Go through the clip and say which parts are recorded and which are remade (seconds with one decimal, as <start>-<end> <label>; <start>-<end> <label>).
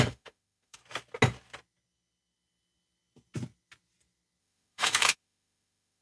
0.0-0.8 remade; 0.8-4.4 recorded; 4.4-6.0 remade